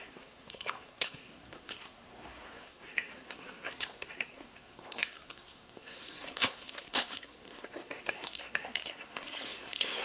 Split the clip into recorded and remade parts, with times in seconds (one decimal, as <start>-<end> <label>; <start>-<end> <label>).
0.0-10.0 remade